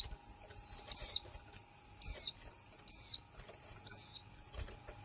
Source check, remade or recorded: recorded